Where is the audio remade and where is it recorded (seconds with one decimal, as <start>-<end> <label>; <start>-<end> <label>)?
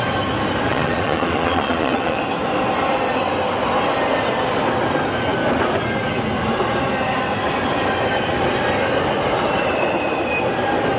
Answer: 0.0-0.7 recorded; 0.7-2.2 remade; 2.2-11.0 recorded